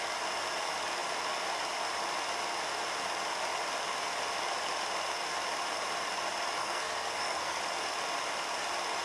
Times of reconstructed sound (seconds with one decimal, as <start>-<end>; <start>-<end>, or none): 6.6-7.6